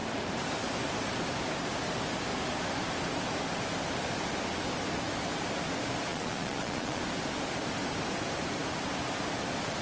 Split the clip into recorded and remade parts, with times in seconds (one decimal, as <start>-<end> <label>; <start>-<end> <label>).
0.0-6.1 recorded; 6.1-7.0 remade; 7.0-9.8 recorded